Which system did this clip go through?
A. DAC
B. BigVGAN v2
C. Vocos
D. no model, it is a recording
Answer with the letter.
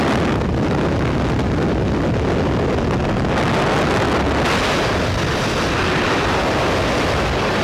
D